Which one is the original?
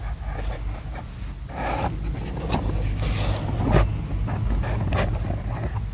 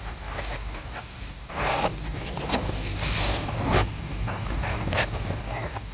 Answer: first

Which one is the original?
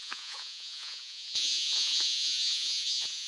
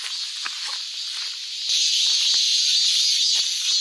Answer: second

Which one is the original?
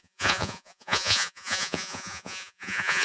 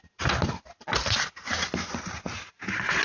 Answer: second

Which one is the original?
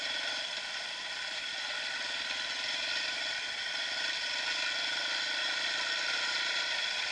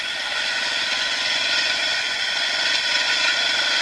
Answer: first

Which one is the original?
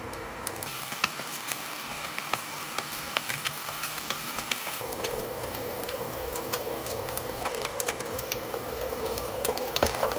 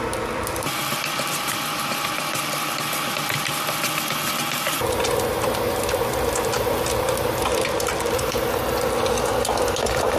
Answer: second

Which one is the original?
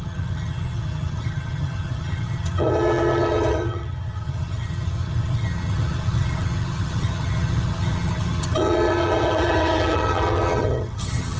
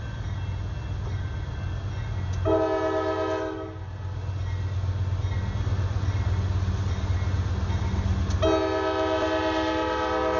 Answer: second